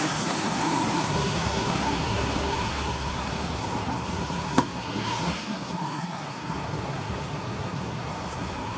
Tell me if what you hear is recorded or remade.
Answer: remade